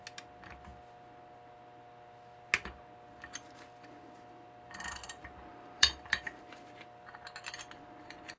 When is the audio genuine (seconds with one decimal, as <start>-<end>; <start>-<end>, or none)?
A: 0.0-5.0; 6.4-8.4